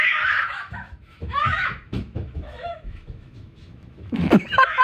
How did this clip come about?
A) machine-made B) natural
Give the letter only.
A